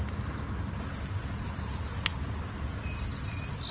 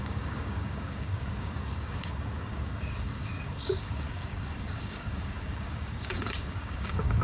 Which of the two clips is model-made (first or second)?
second